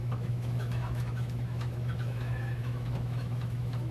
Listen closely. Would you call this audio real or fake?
fake